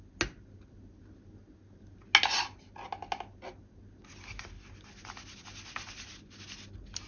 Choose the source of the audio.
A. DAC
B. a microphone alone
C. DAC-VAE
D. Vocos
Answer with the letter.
B